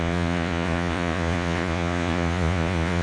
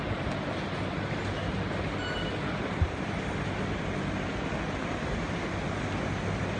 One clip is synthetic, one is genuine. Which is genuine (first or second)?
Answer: second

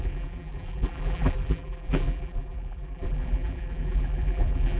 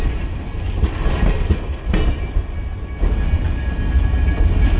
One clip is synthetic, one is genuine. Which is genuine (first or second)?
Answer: second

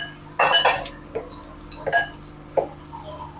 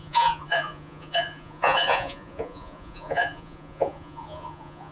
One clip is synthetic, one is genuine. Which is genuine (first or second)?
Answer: first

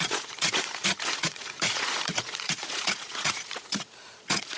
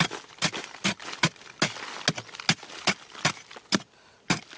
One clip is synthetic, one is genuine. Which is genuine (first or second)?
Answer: second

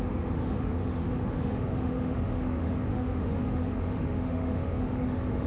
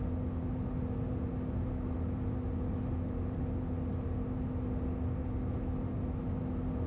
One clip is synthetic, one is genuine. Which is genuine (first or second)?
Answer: second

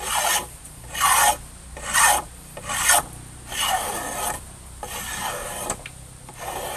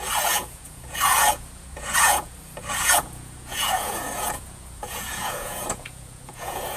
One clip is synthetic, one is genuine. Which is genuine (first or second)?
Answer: first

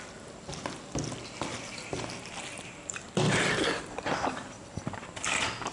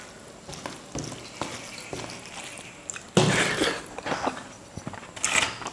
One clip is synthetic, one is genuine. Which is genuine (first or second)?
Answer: second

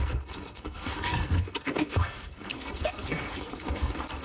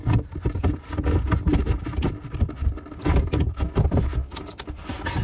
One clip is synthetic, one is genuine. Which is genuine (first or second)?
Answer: second